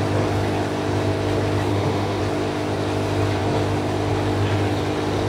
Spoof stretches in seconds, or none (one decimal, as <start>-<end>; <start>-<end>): 1.7-2.2